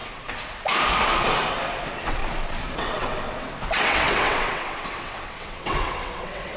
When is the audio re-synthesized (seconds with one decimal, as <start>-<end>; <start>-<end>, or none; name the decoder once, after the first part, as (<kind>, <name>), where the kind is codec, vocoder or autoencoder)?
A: 1.5-2.2 (vocoder, WaveNeXt); 2.8-6.6